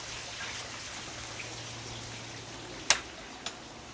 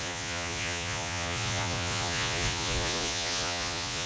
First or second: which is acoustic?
first